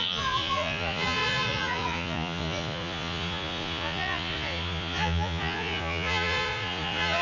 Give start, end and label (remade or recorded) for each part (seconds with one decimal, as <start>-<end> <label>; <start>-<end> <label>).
0.0-7.2 remade